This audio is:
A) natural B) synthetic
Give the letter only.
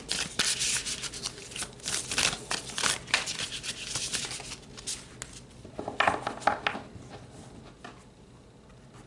A